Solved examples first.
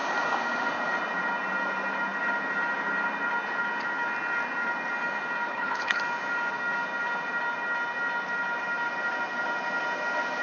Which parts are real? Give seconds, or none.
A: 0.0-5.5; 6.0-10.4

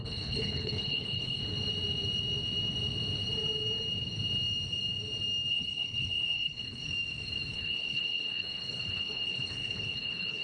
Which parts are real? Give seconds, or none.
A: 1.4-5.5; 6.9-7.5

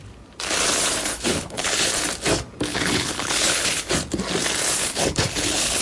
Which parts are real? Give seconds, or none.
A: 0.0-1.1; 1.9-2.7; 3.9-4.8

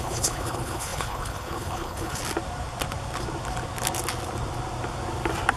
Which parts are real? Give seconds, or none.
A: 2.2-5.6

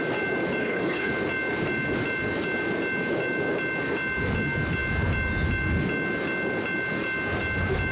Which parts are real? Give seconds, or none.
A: 0.0-0.6; 1.1-7.9

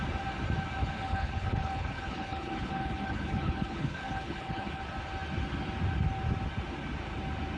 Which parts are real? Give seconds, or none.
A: 0.0-0.8; 4.8-7.6